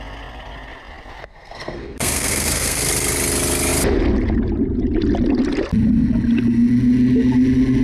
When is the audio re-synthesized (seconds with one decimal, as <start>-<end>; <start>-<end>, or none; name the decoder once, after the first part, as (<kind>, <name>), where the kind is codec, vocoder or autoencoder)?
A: 1.2-2.8 (codec, SNAC)